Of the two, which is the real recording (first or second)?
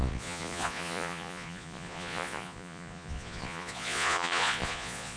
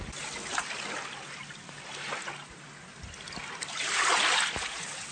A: second